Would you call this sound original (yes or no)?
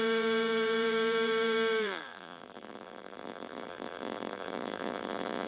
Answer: no